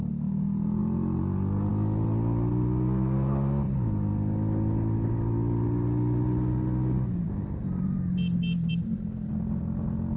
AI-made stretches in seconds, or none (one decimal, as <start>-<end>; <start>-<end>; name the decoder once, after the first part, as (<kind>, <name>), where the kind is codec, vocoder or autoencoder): none